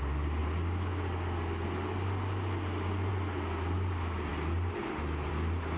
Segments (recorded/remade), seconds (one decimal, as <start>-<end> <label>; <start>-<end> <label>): 0.0-5.8 recorded